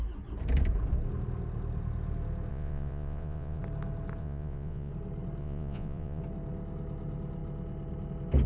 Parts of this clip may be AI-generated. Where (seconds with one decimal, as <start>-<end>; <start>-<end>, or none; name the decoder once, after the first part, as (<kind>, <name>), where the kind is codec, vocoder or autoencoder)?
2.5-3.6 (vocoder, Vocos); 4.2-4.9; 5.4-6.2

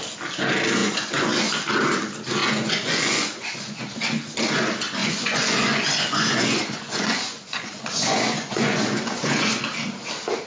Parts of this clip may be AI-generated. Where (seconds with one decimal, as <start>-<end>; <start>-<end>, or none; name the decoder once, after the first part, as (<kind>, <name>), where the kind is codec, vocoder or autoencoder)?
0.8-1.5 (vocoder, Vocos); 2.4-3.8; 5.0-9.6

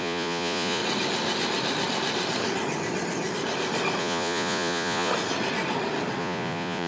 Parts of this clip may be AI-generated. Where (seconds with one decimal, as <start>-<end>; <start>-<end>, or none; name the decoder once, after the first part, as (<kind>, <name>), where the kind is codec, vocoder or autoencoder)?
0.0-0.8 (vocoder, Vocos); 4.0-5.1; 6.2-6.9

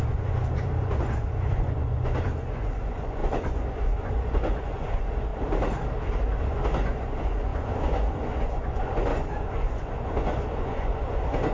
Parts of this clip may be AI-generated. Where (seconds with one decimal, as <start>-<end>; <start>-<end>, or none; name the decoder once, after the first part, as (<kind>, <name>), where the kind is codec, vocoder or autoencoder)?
0.0-5.3 (vocoder, Vocos); 6.4-11.5